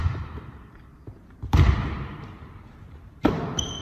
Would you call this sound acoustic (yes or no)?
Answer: no